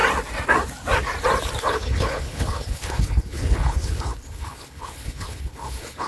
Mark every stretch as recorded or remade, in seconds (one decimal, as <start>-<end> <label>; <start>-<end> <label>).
0.0-1.6 recorded; 1.6-6.1 remade